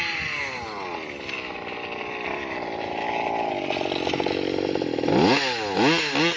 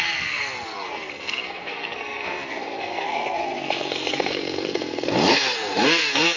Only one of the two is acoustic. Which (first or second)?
first